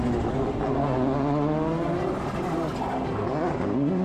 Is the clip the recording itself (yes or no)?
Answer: yes